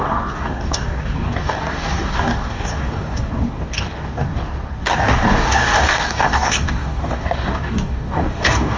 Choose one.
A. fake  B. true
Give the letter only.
A